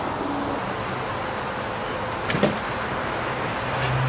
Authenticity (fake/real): real